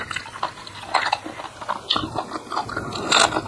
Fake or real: real